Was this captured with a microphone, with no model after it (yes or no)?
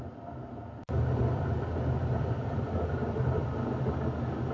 yes